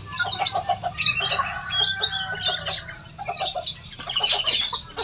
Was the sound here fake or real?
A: real